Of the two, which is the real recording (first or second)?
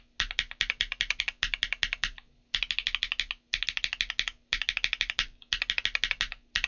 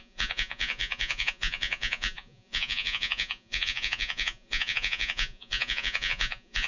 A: first